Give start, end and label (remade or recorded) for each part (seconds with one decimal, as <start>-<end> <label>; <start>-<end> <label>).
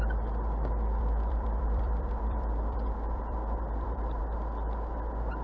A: 0.0-1.0 recorded; 1.0-4.2 remade; 4.2-5.4 recorded